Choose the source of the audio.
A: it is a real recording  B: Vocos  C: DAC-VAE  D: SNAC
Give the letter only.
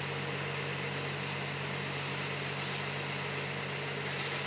A